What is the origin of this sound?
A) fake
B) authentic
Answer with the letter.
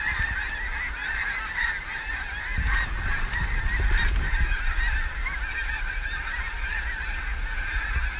B